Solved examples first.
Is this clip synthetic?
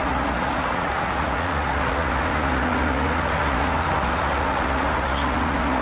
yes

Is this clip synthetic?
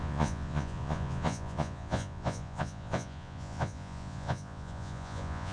yes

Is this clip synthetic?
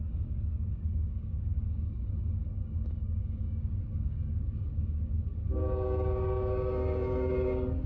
yes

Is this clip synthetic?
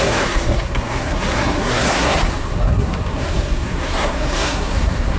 yes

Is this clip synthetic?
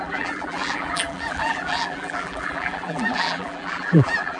yes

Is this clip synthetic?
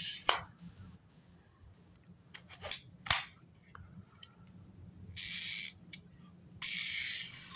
no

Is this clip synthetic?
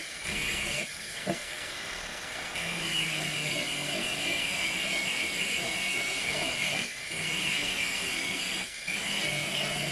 yes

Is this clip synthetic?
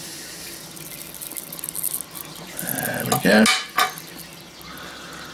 no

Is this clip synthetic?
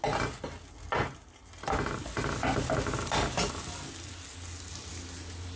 no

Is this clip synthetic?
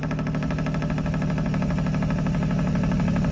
no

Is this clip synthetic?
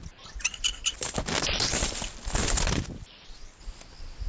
no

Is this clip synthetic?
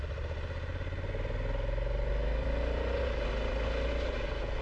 no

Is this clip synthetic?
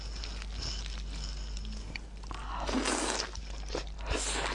no